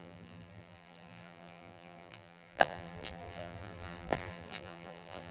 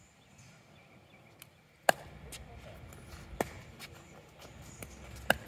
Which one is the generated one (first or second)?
first